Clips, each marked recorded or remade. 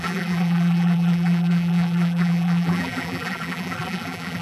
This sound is remade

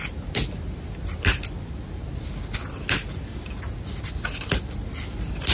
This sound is recorded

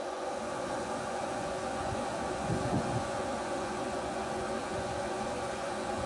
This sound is remade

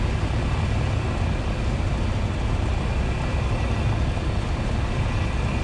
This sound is recorded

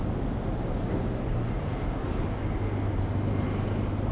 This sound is recorded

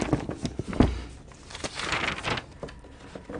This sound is recorded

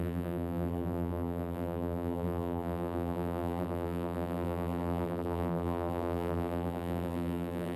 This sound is remade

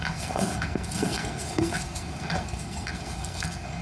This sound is remade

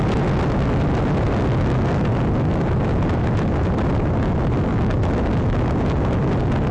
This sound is recorded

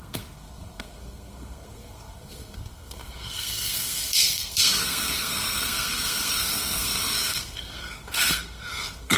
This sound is remade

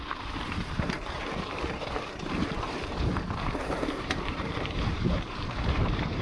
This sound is remade